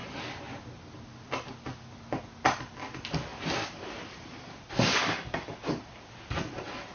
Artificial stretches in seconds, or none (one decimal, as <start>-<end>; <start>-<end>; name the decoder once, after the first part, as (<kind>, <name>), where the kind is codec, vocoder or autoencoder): 5.0-5.5 (codec, DAC)